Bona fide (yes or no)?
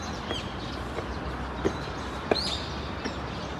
yes